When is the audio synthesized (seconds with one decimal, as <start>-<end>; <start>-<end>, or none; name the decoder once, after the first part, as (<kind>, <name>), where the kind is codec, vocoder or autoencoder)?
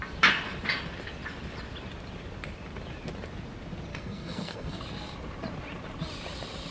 3.9-4.8 (codec, SNAC)